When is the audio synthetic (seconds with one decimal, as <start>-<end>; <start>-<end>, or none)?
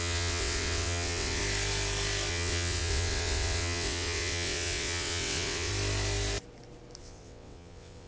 0.0-1.4; 2.3-5.7; 7.0-8.1